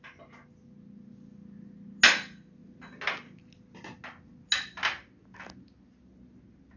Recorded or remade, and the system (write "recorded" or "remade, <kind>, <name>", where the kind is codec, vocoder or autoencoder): recorded